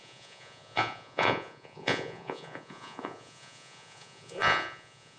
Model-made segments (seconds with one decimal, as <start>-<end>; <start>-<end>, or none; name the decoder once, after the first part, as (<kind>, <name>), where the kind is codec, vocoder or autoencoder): 0.0-5.2 (vocoder, Vocos)